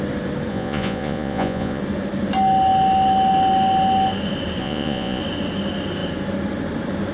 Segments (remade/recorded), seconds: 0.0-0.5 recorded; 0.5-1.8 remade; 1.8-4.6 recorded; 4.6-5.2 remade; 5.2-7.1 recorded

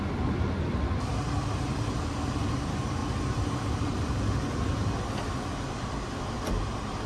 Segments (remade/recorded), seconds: 0.0-7.1 recorded